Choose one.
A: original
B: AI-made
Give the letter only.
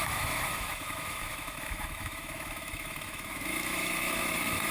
B